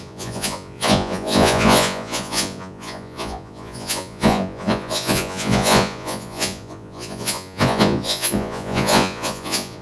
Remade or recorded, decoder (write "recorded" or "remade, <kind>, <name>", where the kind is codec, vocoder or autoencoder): remade, vocoder, Vocos